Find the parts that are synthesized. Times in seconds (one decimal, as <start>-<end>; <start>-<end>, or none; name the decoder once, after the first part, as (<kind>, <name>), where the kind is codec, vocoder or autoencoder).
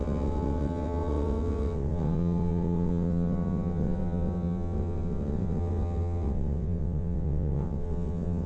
0.0-8.5 (vocoder, WaveNeXt)